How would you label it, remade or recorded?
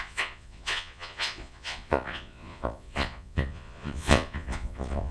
remade